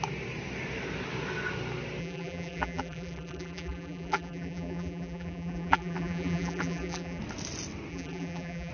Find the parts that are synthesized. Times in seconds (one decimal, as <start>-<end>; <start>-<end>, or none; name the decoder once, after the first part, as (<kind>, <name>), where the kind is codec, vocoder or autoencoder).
2.0-7.2 (vocoder, BigVGAN v2); 7.9-8.7